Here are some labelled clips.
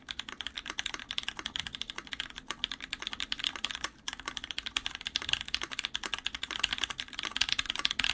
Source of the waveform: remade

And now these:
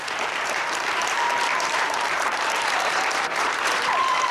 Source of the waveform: remade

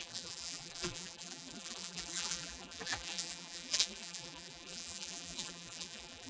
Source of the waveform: remade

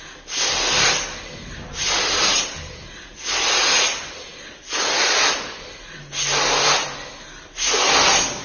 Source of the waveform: recorded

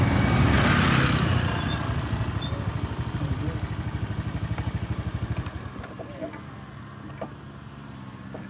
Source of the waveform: recorded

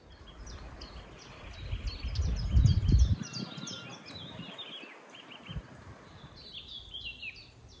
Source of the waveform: recorded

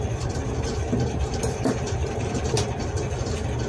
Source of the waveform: remade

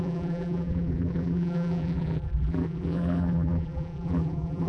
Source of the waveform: remade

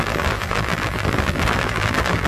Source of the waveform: remade